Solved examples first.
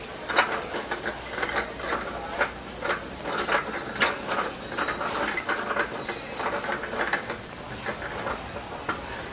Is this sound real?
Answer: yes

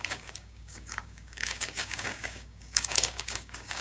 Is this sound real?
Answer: no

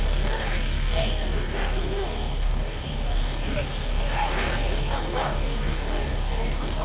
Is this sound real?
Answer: no